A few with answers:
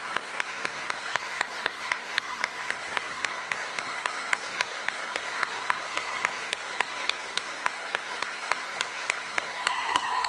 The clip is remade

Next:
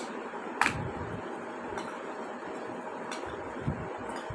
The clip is recorded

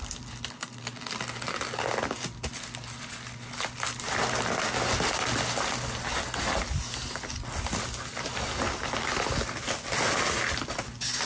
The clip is recorded